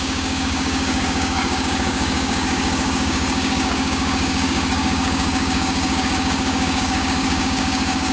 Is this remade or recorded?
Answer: remade